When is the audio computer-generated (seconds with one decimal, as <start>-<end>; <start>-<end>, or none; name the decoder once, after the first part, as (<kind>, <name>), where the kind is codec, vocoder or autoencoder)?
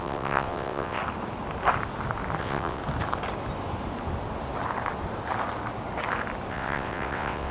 0.0-1.0 (vocoder, WaveNeXt); 2.4-2.8; 6.5-7.5